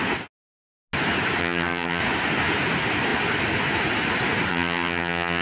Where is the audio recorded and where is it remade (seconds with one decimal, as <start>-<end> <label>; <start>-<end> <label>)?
0.0-1.4 recorded; 1.4-2.0 remade; 2.0-4.5 recorded; 4.5-5.4 remade